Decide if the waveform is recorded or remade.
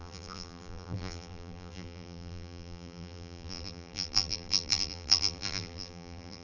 remade